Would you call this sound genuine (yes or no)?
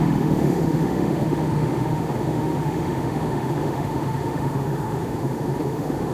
no